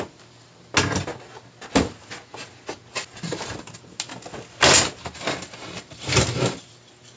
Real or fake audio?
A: real